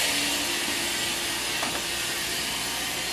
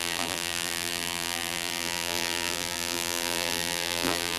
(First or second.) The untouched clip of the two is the first